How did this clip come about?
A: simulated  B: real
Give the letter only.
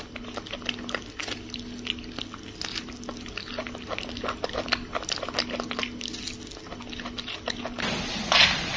B